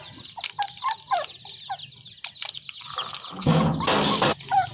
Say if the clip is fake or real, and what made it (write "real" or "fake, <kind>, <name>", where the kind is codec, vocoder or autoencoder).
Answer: real